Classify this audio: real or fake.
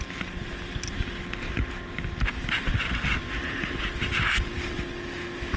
real